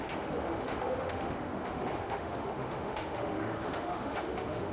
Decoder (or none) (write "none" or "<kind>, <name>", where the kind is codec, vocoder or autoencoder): autoencoder, DAC-VAE